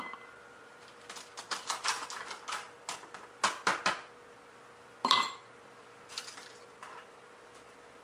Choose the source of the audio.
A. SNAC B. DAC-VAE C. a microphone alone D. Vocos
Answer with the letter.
C